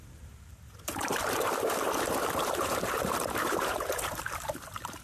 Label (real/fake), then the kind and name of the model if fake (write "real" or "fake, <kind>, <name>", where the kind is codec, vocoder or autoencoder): fake, vocoder, BigVGAN v2